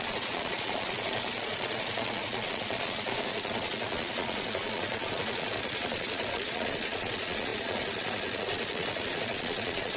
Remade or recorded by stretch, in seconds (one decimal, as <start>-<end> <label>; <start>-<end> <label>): 0.0-10.0 remade